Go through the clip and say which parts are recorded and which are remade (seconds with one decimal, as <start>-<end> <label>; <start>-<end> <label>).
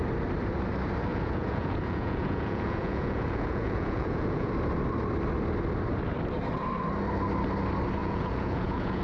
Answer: 0.0-1.1 recorded; 1.1-4.5 remade; 4.5-8.0 recorded; 8.0-9.0 remade